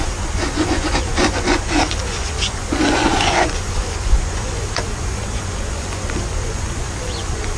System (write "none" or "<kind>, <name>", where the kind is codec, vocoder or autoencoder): vocoder, Vocos